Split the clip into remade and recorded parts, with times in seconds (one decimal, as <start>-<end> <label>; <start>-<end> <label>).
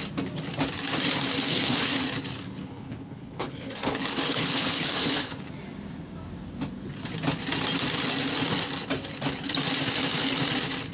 0.0-1.5 recorded; 1.5-2.0 remade; 2.0-2.6 recorded; 2.6-5.5 remade; 5.5-10.9 recorded